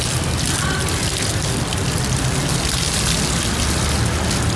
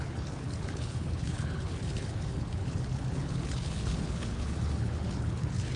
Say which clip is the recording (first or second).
first